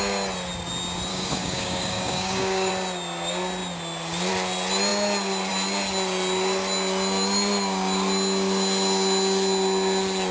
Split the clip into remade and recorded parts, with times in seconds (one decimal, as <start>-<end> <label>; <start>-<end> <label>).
0.0-1.1 recorded; 1.1-2.7 remade; 2.7-10.3 recorded